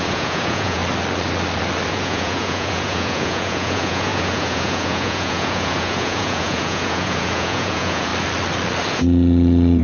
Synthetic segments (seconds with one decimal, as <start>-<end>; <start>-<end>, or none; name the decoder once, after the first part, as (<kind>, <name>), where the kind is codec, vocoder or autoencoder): 0.0-0.8 (vocoder, Vocos); 1.9-8.1; 8.9-9.8